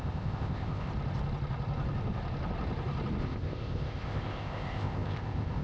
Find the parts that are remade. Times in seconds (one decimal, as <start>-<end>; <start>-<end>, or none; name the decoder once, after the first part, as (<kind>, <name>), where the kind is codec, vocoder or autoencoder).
0.0-0.9 (codec, ZipCodec); 3.2-5.6